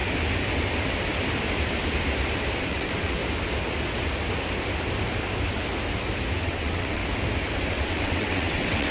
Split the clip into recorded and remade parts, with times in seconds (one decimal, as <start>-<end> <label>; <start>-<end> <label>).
0.0-2.6 recorded; 2.6-3.2 remade; 3.2-6.4 recorded; 6.4-7.0 remade; 7.0-7.7 recorded; 7.7-8.9 remade